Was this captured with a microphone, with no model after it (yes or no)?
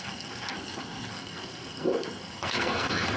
no